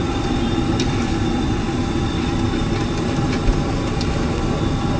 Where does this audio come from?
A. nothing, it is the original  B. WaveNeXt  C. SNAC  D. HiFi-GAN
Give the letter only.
A